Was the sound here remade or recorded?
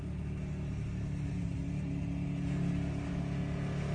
recorded